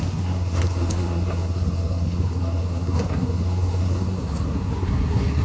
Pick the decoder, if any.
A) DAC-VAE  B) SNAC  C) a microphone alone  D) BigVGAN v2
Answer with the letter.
B